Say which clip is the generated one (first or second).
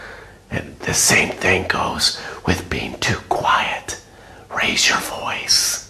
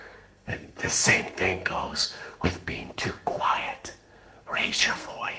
second